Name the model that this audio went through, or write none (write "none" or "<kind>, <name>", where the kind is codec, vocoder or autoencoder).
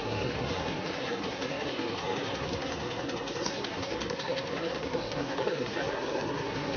codec, SNAC